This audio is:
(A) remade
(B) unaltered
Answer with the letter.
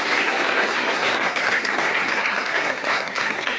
A